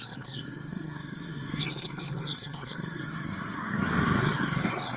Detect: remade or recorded remade